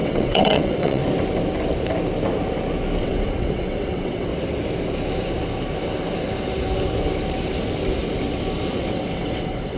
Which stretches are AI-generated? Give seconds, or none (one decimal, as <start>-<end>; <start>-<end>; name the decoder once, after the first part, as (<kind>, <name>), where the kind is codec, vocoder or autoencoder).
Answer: 0.0-1.0 (vocoder, WaveNeXt); 3.0-4.3; 8.9-9.8